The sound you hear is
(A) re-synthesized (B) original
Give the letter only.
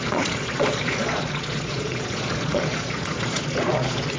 A